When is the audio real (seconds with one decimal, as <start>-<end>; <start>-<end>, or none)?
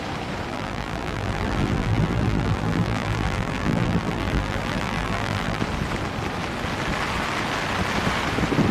0.0-0.5; 5.6-8.7